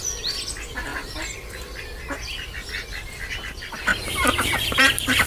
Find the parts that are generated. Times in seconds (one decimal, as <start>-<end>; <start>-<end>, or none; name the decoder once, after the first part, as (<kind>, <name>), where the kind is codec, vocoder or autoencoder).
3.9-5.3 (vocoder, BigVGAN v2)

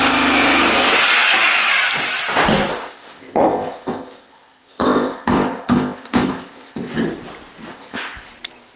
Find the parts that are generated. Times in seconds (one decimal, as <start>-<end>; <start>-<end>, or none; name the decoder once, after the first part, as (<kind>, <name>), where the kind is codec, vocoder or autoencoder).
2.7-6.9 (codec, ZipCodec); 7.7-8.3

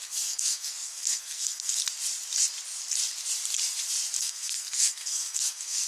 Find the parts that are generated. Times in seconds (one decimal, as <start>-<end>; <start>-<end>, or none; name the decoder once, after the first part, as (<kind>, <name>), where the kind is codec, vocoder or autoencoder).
0.0-1.8 (codec, SNAC); 4.2-5.9

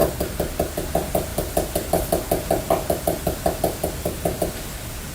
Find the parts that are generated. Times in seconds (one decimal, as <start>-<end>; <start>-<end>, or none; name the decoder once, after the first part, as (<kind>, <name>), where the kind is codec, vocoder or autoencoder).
none

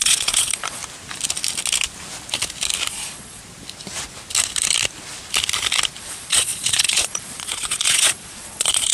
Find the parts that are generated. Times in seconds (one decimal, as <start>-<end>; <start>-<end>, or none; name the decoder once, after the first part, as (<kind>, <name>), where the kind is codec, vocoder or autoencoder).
0.0-0.8 (vocoder, Vocos); 2.9-3.4; 6.0-8.9

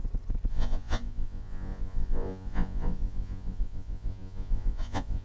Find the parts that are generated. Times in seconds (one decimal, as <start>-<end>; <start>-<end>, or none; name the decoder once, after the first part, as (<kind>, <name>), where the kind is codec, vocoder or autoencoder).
0.5-5.2 (vocoder, Vocos)